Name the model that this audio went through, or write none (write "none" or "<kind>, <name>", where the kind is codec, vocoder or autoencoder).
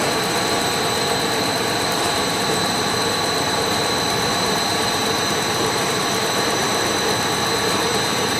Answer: vocoder, BigVGAN v2